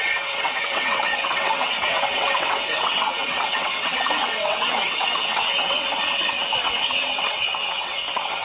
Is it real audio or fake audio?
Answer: fake